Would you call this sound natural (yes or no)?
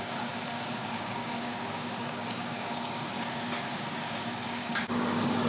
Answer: no